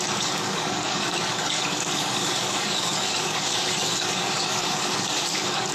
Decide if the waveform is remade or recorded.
remade